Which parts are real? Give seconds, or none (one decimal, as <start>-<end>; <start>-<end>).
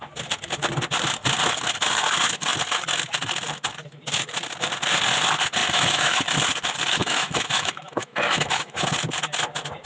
0.0-5.6; 6.2-7.0; 8.9-9.9